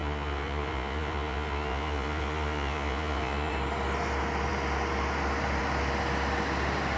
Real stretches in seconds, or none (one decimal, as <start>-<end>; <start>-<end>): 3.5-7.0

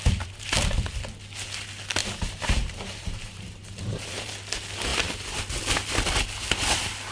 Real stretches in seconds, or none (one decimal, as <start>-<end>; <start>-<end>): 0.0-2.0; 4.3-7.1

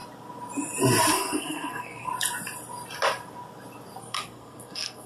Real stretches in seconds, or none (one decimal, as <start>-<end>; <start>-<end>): 0.0-1.1; 2.1-4.0

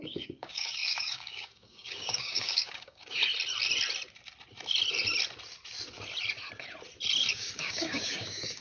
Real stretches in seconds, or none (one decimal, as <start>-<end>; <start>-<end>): 3.2-7.3

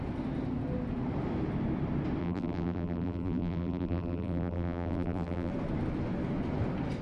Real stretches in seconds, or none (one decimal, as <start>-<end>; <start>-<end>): 0.0-2.2; 5.5-7.0

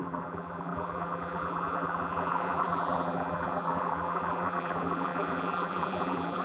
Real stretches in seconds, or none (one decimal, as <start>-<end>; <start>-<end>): none